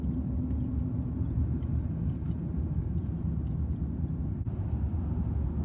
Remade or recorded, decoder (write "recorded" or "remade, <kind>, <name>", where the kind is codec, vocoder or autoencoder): recorded